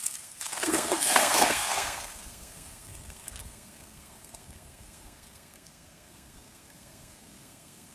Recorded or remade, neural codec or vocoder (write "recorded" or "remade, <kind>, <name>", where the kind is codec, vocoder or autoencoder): remade, codec, SNAC